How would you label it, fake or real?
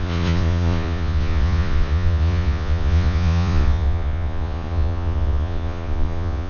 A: fake